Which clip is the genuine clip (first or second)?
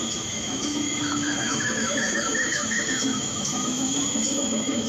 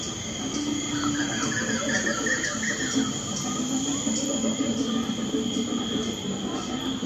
second